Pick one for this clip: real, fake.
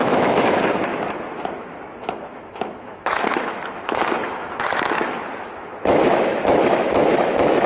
fake